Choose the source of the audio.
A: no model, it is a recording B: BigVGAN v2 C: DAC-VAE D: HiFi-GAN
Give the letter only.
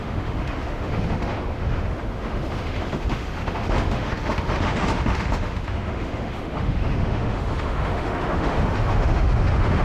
C